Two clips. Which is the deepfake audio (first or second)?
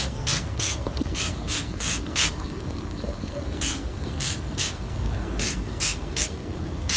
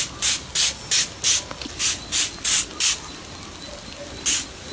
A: first